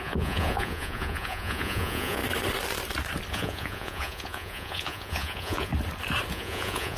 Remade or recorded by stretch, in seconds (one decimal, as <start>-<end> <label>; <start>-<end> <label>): 0.0-2.2 remade; 2.2-3.3 recorded; 3.3-5.7 remade; 5.7-6.3 recorded; 6.3-7.0 remade